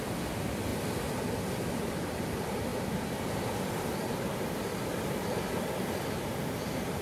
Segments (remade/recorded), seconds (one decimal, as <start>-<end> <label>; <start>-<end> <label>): 0.0-7.0 recorded

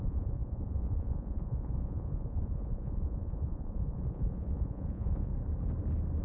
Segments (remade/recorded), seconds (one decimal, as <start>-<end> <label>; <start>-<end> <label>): 0.0-5.3 remade; 5.3-6.2 recorded

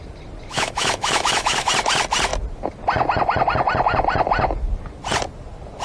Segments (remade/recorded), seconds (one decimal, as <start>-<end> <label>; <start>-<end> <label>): 0.0-0.5 recorded; 0.5-1.7 remade; 1.7-5.8 recorded

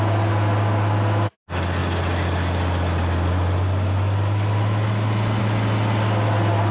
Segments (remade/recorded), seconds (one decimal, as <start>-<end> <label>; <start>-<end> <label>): 0.0-6.7 recorded

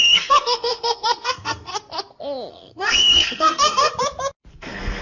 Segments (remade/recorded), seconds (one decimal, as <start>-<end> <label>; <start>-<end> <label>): 0.0-1.7 remade; 1.7-2.5 recorded; 2.5-3.9 remade; 3.9-4.5 recorded; 4.5-5.0 remade